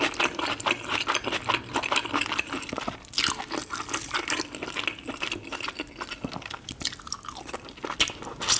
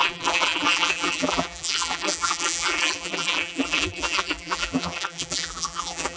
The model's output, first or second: second